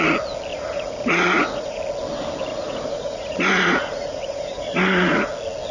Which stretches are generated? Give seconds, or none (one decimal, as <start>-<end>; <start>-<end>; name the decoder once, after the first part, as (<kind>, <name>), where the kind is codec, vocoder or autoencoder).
0.5-1.8 (vocoder, Vocos); 2.5-5.3